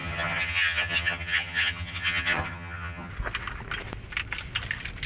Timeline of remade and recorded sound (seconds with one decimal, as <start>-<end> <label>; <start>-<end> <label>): 0.0-3.1 remade; 3.1-5.1 recorded